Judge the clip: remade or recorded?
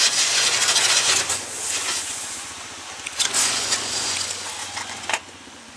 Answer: remade